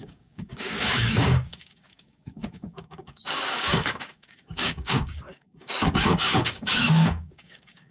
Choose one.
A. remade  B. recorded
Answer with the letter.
A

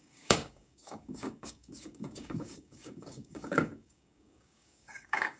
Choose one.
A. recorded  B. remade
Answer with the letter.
B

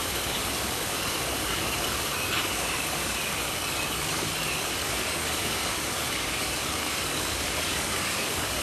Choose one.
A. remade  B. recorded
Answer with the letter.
A